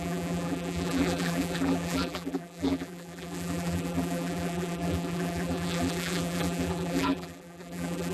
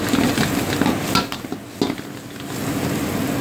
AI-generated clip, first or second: first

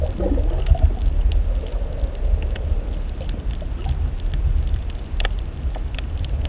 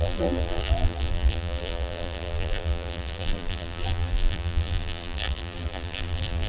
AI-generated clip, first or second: second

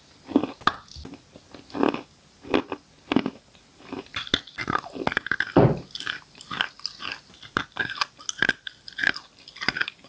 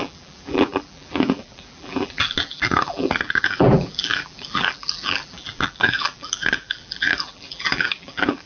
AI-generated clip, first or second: second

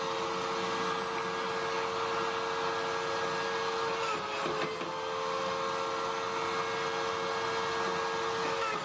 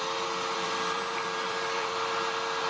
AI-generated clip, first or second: second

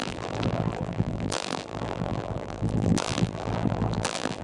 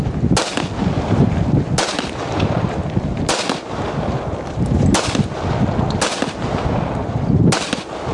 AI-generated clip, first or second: first